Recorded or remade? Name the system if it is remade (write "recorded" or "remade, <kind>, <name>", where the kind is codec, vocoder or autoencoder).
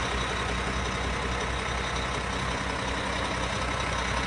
remade, vocoder, Vocos